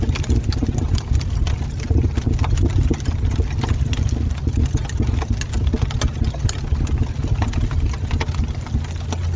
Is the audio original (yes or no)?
yes